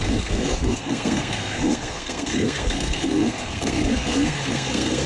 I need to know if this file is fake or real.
fake